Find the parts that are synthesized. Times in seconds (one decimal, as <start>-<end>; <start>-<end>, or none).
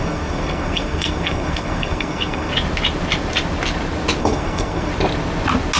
0.0-2.5; 4.2-4.9